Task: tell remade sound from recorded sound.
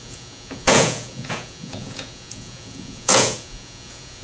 remade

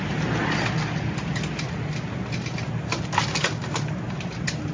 recorded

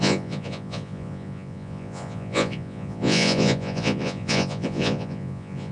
remade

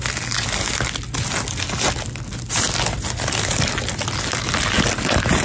recorded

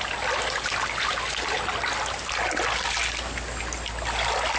recorded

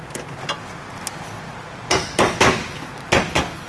recorded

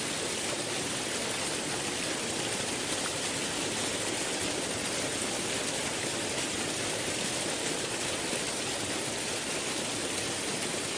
recorded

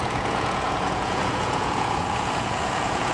remade